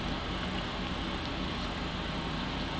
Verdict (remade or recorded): recorded